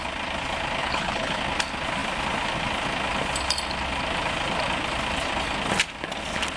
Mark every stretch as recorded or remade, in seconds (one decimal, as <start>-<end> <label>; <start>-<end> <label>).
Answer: 0.0-0.8 recorded; 0.8-1.4 remade; 1.4-6.6 recorded